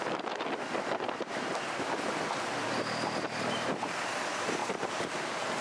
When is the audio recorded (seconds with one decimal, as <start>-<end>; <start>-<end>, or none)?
0.0-4.6